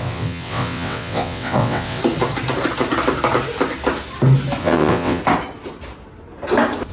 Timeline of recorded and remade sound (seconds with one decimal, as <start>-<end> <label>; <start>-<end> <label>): 0.0-2.0 remade; 2.0-4.6 recorded; 4.6-5.2 remade; 5.2-6.9 recorded